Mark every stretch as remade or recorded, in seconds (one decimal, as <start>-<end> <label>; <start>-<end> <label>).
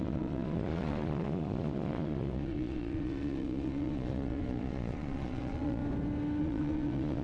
0.0-5.8 remade; 5.8-6.4 recorded; 6.4-7.2 remade